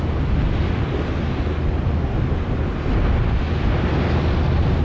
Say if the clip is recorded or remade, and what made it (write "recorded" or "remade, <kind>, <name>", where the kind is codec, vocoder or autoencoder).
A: recorded